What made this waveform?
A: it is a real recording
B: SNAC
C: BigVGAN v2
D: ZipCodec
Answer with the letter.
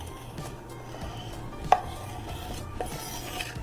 A